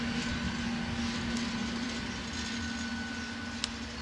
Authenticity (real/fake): real